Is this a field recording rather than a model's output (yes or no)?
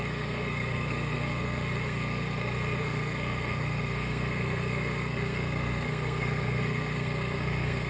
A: no